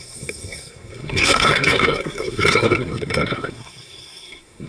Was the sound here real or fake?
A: fake